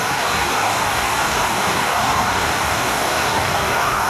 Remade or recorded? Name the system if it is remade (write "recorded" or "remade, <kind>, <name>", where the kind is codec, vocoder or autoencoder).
remade, codec, DAC